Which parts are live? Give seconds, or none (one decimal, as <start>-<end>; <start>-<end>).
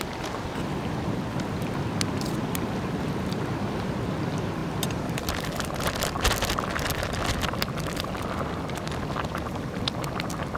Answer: 0.0-10.6